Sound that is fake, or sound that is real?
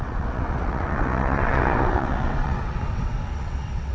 fake